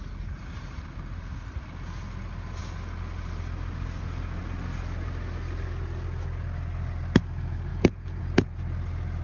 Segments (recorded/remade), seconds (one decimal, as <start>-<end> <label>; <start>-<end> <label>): 0.0-7.7 recorded; 7.7-8.2 remade; 8.2-9.2 recorded